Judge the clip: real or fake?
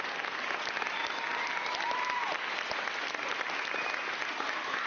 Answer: real